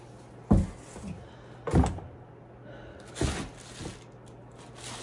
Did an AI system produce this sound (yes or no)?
no